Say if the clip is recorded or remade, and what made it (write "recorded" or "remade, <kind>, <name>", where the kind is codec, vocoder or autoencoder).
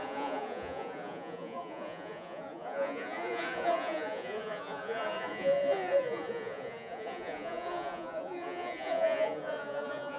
remade, vocoder, Vocos